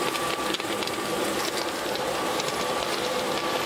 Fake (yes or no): no